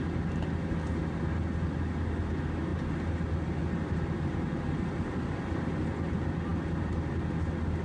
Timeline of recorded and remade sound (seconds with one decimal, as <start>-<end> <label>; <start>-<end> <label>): 0.0-7.8 recorded